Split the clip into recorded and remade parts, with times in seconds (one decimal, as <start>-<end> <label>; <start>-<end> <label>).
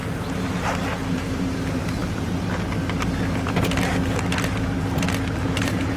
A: 0.0-2.0 remade; 2.0-5.6 recorded; 5.6-6.0 remade